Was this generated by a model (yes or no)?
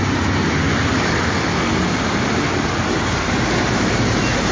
no